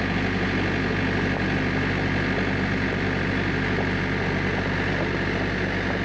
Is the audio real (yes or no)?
yes